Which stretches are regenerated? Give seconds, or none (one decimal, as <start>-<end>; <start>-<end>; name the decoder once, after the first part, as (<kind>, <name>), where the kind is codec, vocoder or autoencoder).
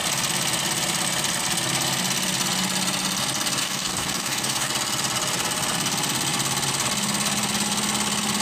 3.6-4.7 (codec, DAC)